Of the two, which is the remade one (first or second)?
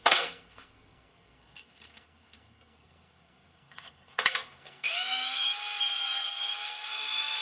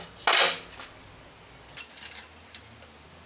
first